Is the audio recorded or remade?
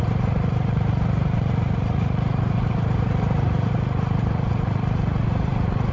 remade